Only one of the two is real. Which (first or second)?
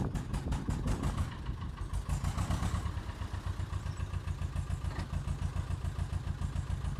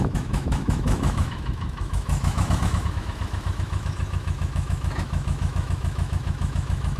first